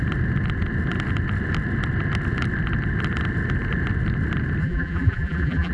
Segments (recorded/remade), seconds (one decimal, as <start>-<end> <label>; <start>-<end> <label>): 0.0-4.6 recorded; 4.6-5.7 remade

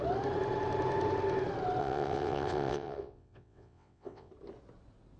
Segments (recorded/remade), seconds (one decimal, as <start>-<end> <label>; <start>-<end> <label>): 0.0-1.8 recorded; 1.8-4.3 remade; 4.3-5.2 recorded

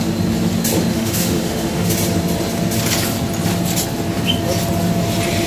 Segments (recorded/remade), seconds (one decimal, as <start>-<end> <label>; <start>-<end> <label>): 0.0-0.9 recorded; 0.9-1.9 remade; 1.9-5.5 recorded